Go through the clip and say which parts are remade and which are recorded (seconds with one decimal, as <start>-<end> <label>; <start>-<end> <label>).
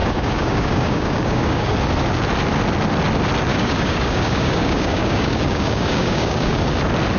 0.0-1.7 remade; 1.7-3.5 recorded; 3.5-6.6 remade; 6.6-7.2 recorded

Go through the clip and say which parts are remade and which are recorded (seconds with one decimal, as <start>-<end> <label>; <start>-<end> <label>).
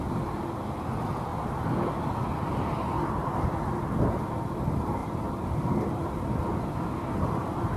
0.0-7.8 recorded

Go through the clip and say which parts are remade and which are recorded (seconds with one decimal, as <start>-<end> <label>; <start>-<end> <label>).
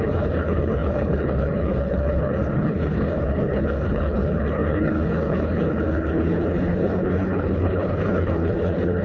0.0-9.0 remade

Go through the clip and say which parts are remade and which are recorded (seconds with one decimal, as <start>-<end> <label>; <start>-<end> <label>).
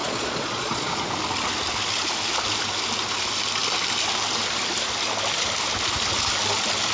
0.0-1.1 remade; 1.1-6.9 recorded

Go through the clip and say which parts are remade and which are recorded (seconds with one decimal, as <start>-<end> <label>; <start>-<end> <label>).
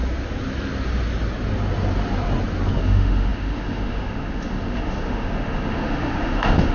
0.0-2.8 recorded; 2.8-6.7 remade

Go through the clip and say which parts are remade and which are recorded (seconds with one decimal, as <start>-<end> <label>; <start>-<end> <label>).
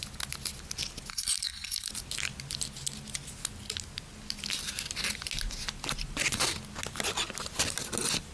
0.0-1.1 recorded; 1.1-1.9 remade; 1.9-8.3 recorded